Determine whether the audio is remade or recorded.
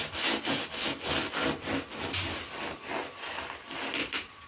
recorded